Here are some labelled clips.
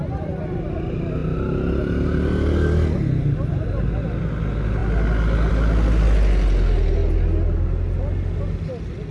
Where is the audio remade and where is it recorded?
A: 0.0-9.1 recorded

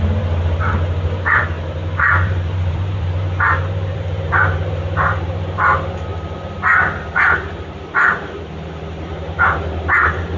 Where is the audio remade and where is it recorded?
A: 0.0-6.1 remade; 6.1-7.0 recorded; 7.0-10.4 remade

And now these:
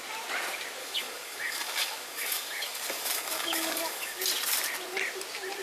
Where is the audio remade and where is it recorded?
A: 0.0-0.8 recorded; 0.8-4.2 remade; 4.2-5.6 recorded

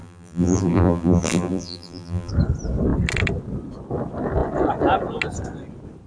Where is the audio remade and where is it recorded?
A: 0.0-2.3 remade; 2.3-6.1 recorded

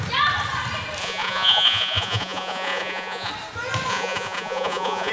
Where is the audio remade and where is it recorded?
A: 0.0-1.0 recorded; 1.0-3.3 remade; 3.3-3.9 recorded; 3.9-5.1 remade